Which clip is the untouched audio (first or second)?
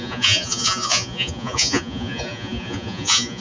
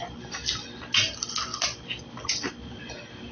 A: second